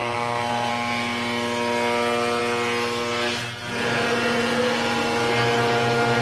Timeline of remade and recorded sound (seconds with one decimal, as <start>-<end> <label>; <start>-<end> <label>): 0.0-0.7 remade; 0.7-6.2 recorded

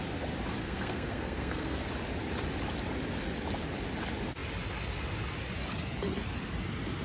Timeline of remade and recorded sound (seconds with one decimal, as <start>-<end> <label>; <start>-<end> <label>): 0.0-0.6 recorded; 0.6-1.9 remade; 1.9-7.0 recorded